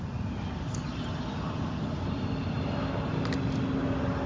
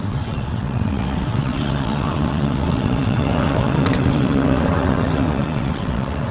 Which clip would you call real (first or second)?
first